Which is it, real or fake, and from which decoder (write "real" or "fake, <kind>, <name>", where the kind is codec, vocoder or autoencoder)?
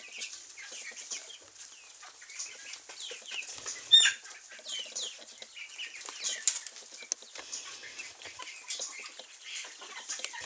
real